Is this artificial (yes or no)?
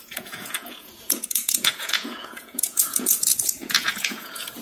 yes